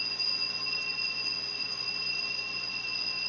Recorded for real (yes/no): yes